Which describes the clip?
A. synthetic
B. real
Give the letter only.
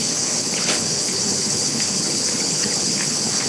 A